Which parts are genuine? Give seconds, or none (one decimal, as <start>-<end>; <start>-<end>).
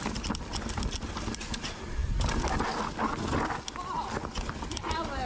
0.0-5.3